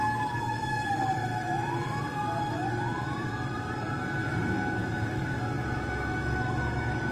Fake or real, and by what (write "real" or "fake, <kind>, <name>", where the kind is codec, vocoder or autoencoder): fake, autoencoder, DAC-VAE